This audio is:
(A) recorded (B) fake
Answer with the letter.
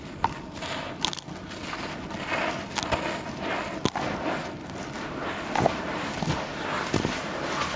A